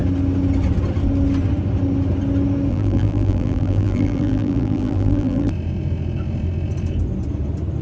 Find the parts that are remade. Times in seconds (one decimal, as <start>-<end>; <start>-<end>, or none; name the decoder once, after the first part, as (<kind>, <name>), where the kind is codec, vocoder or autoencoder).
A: 2.7-5.5 (vocoder, BigVGAN v2)

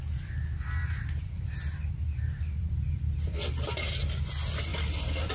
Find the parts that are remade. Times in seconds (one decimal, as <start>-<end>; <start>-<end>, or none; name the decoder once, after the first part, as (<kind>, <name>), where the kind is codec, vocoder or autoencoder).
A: 0.8-4.0 (vocoder, BigVGAN v2)

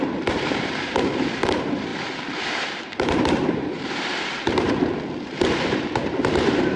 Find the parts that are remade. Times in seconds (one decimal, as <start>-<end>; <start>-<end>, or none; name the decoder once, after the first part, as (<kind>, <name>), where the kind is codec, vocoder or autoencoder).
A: 0.0-4.8 (vocoder, BigVGAN v2); 6.3-6.8